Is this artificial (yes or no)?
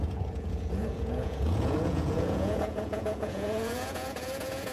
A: yes